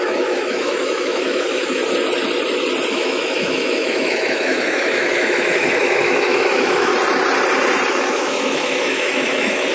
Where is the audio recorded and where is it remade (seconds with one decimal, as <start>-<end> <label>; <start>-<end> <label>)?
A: 0.0-1.8 remade; 1.8-2.9 recorded; 2.9-6.9 remade; 6.9-7.9 recorded; 7.9-9.7 remade